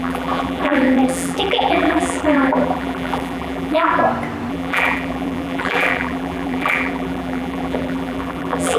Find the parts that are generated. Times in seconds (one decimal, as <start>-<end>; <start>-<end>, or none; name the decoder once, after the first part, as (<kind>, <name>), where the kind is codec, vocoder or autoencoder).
0.0-4.0 (vocoder, BigVGAN v2); 4.5-8.8